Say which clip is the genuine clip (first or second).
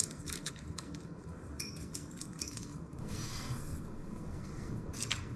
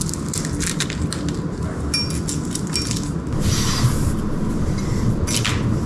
second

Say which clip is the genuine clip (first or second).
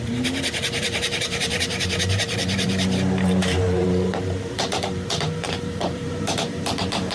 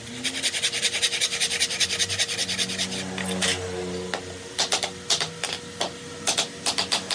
second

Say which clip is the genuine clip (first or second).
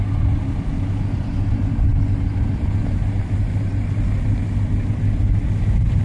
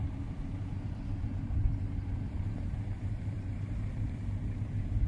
first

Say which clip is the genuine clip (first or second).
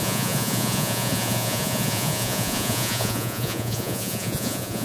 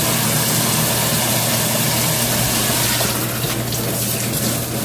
second